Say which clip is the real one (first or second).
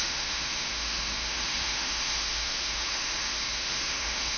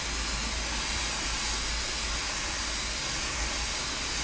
second